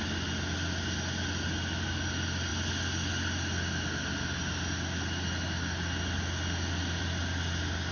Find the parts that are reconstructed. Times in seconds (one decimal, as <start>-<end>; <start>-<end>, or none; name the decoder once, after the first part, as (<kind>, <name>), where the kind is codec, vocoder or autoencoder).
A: none